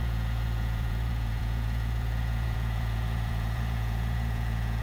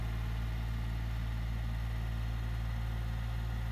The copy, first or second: first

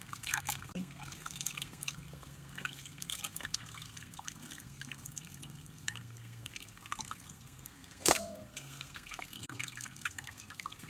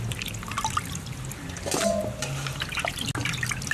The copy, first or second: first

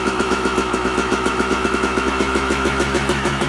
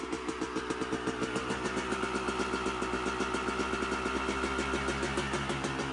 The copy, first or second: first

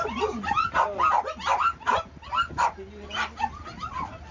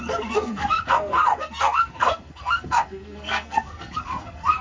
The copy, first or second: second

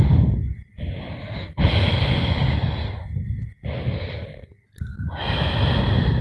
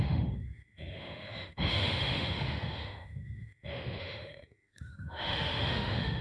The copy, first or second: second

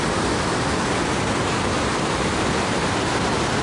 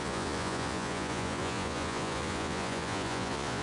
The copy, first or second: second